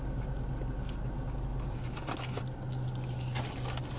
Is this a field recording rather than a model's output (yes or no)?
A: yes